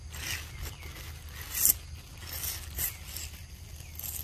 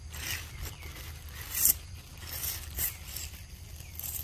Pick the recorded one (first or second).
first